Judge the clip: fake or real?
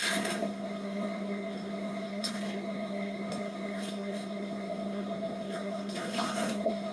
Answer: fake